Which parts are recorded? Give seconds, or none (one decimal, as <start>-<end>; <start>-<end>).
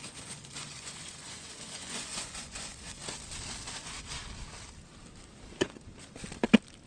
3.0-3.8; 4.2-5.5; 5.9-6.9